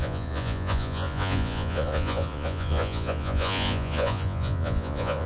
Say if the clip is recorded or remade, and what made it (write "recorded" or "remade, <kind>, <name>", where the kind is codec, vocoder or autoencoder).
remade, vocoder, Vocos